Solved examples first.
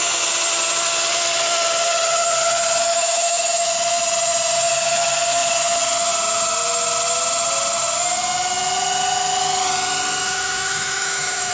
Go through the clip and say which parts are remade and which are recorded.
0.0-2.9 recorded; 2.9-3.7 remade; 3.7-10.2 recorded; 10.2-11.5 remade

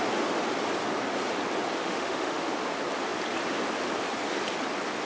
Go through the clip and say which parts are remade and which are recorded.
0.0-1.8 recorded; 1.8-2.5 remade; 2.5-5.1 recorded

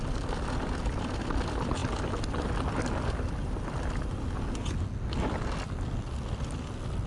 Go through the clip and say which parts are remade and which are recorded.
0.0-7.1 recorded